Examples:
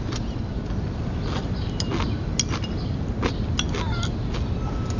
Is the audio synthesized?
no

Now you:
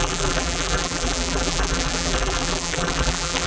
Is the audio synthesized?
yes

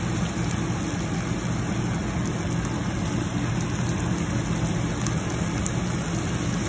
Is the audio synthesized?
no